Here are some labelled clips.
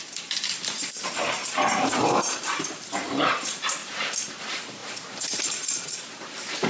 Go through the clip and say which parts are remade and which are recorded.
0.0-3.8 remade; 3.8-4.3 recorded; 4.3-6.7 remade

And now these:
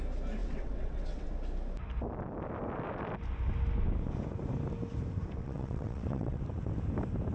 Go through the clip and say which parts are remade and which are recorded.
0.0-0.4 recorded; 0.4-1.3 remade; 1.3-5.4 recorded; 5.4-6.4 remade; 6.4-7.3 recorded

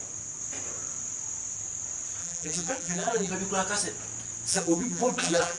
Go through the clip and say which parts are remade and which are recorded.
0.0-2.2 recorded; 2.2-3.3 remade; 3.3-4.5 recorded; 4.5-5.6 remade